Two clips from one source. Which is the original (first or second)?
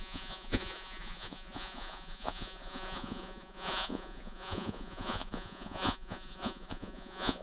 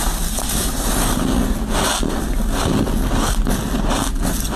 second